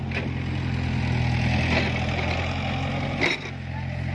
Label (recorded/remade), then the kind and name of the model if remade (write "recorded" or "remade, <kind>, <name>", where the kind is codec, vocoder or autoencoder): recorded